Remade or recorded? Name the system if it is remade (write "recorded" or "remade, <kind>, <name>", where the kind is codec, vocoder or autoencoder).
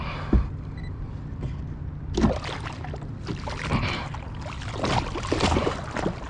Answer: recorded